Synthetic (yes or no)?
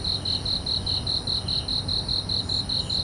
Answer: no